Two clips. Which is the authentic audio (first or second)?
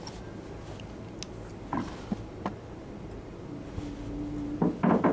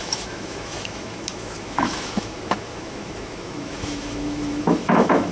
first